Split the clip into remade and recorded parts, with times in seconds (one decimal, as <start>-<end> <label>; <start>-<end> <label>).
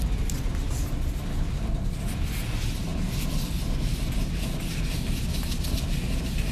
0.0-6.5 recorded